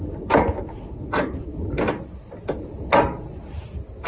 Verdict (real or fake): real